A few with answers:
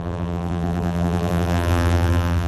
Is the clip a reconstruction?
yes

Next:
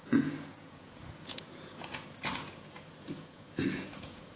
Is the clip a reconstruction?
yes